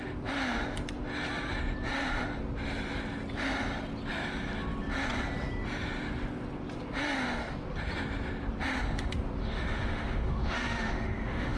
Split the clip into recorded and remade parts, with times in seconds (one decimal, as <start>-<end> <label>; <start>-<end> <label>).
0.0-9.4 recorded; 9.4-11.6 remade